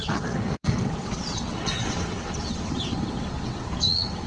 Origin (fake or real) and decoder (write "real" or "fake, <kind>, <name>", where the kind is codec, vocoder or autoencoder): fake, vocoder, WaveNeXt